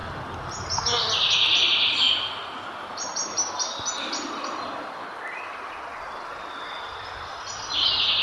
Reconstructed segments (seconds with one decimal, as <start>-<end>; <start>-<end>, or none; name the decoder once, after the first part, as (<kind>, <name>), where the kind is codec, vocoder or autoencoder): none